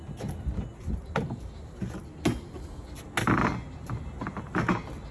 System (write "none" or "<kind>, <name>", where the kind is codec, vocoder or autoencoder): none